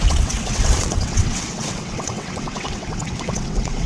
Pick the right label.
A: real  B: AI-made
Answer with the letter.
B